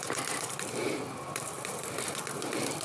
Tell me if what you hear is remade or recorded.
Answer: remade